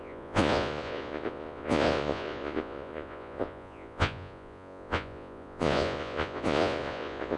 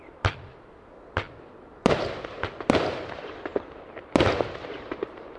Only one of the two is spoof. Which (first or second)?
first